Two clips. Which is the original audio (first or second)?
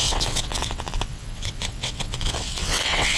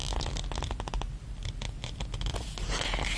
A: second